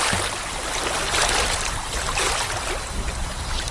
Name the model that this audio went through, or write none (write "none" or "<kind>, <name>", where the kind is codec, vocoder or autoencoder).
none